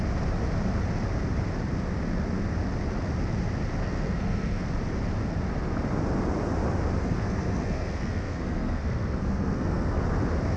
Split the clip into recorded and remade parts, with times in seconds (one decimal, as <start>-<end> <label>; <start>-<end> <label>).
0.0-3.8 recorded; 3.8-4.7 remade; 4.7-7.0 recorded; 7.0-10.0 remade; 10.0-10.6 recorded